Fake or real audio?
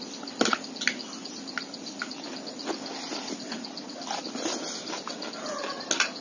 real